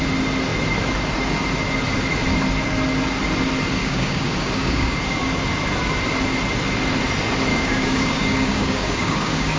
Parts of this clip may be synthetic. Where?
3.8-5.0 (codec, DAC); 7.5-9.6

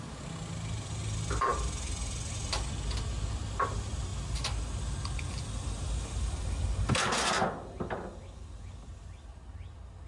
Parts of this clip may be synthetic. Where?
none